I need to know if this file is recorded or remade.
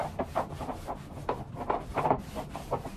recorded